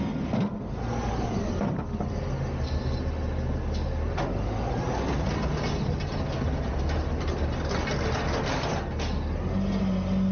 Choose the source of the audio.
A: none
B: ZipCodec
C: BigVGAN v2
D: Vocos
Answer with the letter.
A